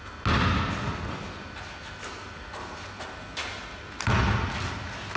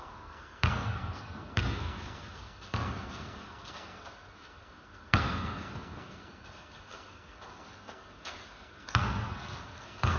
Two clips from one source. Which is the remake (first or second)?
second